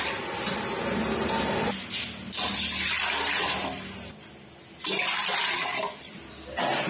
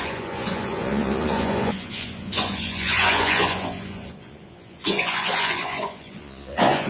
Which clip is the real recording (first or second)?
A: first